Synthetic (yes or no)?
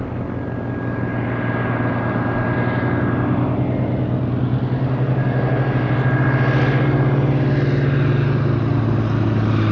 no